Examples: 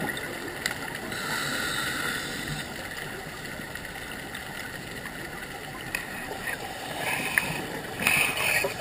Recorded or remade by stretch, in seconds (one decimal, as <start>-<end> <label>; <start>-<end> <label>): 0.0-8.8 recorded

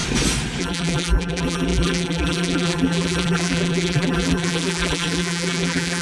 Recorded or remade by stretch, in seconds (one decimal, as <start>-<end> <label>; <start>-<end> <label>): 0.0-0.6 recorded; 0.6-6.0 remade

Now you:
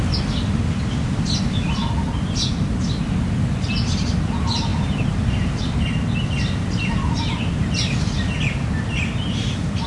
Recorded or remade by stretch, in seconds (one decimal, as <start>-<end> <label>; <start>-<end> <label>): 0.0-4.7 recorded; 4.7-5.6 remade; 5.6-9.9 recorded